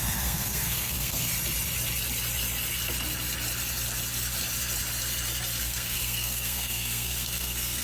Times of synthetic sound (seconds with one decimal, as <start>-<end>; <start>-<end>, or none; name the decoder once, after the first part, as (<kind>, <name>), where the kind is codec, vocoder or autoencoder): 0.0-1.3 (codec, SNAC); 5.6-7.8